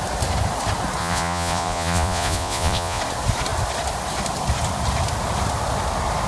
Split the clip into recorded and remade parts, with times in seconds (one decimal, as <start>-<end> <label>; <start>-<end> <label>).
0.0-1.0 recorded; 1.0-3.0 remade; 3.0-6.3 recorded